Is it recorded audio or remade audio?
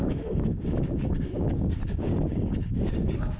remade